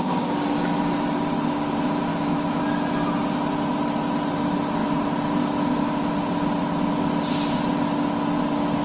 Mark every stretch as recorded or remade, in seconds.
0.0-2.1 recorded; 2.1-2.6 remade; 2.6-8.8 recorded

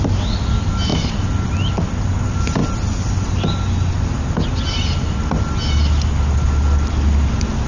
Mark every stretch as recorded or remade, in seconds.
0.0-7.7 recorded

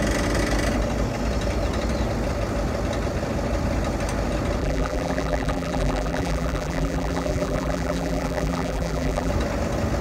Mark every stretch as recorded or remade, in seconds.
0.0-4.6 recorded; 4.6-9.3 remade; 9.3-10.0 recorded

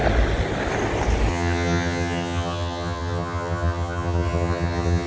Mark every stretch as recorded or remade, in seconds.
0.0-1.3 recorded; 1.3-5.1 remade

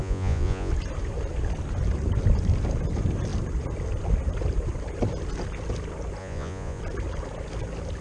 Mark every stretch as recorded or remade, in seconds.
0.0-0.7 remade; 0.7-6.2 recorded; 6.2-6.8 remade; 6.8-8.0 recorded

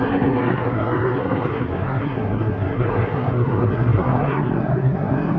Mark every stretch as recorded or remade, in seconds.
0.0-5.4 remade